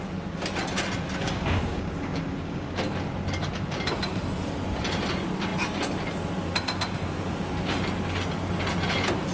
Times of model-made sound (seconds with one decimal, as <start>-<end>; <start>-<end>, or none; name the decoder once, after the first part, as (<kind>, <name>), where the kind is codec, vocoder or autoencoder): 1.2-2.7 (codec, DAC)